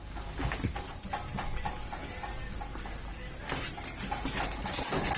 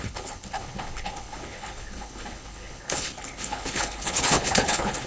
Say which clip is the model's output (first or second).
second